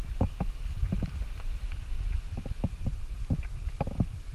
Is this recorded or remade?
recorded